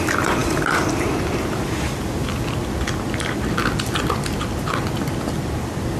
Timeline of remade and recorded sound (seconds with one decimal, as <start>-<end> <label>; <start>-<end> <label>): 0.0-6.0 recorded

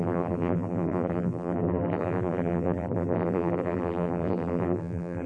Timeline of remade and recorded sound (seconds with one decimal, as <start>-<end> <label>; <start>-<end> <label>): 0.0-5.3 remade

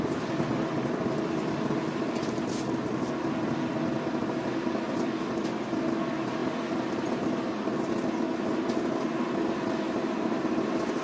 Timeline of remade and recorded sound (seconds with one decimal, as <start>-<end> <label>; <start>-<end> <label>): 0.0-11.0 recorded